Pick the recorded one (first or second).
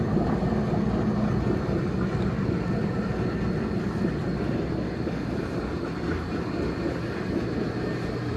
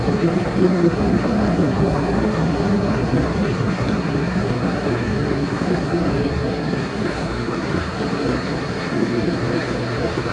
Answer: first